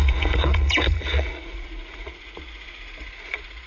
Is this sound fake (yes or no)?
yes